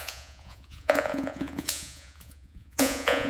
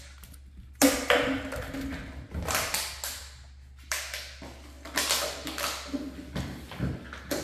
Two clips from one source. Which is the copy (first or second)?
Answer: first